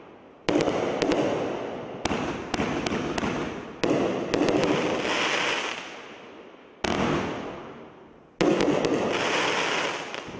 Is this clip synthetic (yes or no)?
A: no